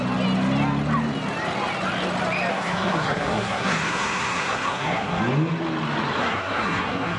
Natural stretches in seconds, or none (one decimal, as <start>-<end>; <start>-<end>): 0.0-2.5; 5.2-6.2